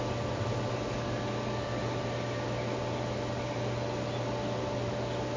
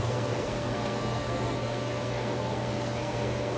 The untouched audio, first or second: first